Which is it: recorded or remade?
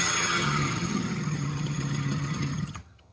remade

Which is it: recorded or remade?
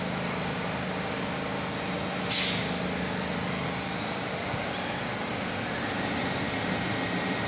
recorded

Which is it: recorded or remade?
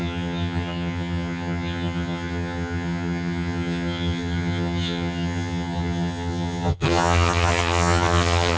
remade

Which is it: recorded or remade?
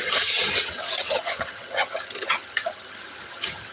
remade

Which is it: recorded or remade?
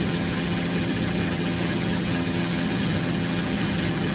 remade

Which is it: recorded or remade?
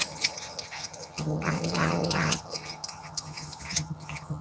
remade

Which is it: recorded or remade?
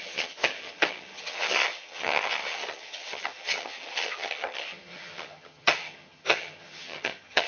remade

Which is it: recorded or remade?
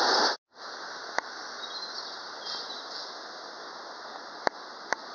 recorded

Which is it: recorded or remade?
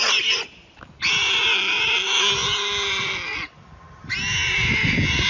recorded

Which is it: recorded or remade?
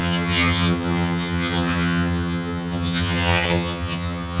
remade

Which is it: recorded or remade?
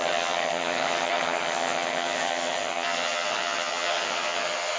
remade